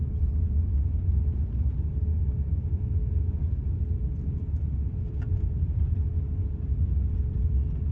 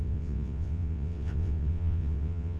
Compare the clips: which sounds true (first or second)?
first